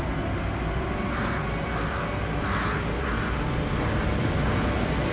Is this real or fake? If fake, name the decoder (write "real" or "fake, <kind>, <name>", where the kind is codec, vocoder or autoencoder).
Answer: real